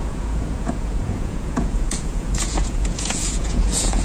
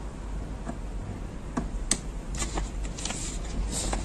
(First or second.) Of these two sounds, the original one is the second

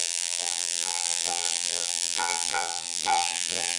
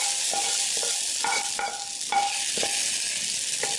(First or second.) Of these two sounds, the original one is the second